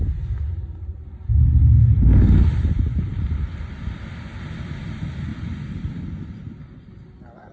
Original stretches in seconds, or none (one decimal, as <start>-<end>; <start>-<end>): 0.0-1.8; 2.5-7.5